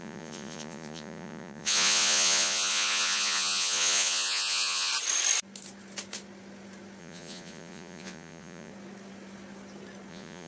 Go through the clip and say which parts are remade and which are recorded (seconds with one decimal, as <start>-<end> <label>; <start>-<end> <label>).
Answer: 0.0-4.9 remade; 4.9-7.0 recorded; 7.0-8.7 remade; 8.7-10.1 recorded; 10.1-10.5 remade